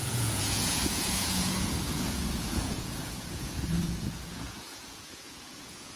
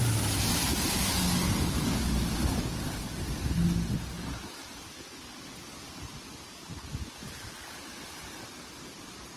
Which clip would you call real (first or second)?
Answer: second